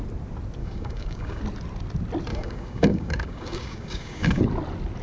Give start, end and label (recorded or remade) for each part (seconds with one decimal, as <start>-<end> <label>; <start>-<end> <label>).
0.0-0.6 recorded; 0.6-1.4 remade; 1.4-2.3 recorded; 2.3-4.4 remade; 4.4-5.0 recorded